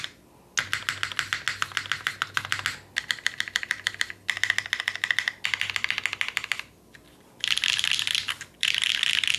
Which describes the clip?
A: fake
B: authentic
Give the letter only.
B